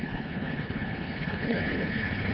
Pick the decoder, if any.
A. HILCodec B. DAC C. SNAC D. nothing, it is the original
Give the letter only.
A